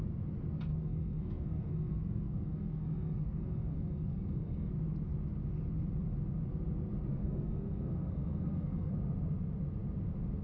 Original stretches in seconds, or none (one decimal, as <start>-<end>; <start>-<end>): 0.0-0.7; 4.7-7.1; 8.9-10.4